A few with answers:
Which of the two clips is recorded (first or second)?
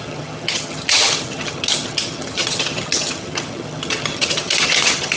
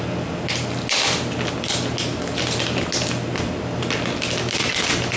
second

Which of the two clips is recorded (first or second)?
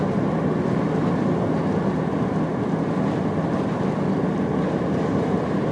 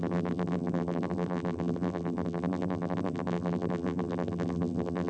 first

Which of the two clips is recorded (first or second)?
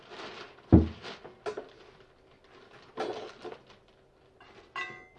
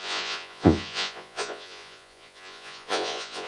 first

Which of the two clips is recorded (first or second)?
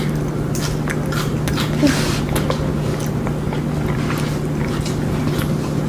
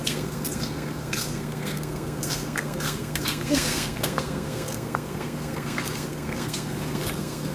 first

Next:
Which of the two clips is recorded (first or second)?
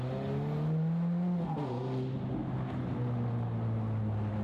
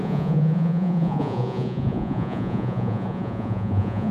first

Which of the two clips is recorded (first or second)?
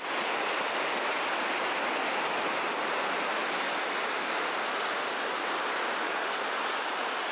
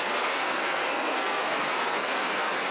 first